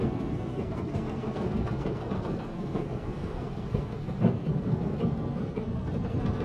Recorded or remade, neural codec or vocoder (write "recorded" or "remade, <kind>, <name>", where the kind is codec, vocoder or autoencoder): remade, codec, SNAC